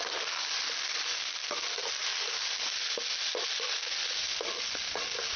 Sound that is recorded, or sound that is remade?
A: recorded